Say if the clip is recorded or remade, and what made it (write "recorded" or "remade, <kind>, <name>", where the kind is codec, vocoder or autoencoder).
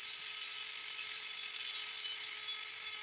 recorded